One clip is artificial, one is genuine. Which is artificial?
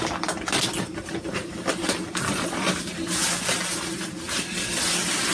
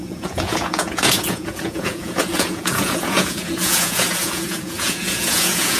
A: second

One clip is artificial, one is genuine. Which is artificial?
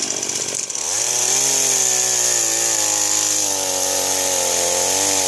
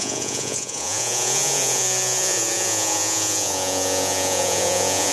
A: second